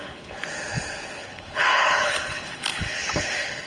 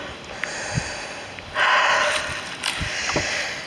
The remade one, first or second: first